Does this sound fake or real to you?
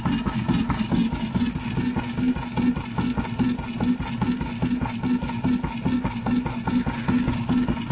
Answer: real